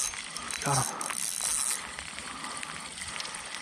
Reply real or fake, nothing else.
real